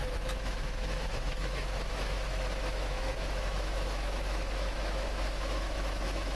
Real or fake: fake